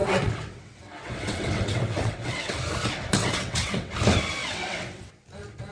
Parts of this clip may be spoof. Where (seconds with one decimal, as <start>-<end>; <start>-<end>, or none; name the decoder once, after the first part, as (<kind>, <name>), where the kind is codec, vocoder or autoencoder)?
0.0-2.6 (vocoder, WaveNeXt); 3.2-3.9; 4.4-5.1